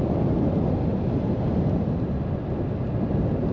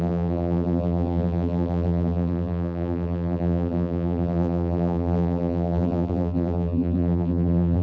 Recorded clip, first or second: first